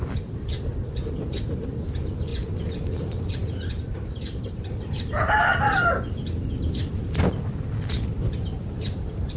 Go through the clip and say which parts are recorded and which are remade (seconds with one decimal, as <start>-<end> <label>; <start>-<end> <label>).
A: 0.0-9.4 recorded